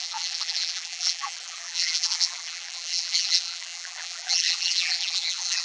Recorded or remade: remade